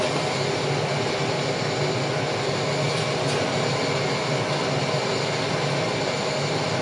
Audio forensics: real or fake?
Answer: real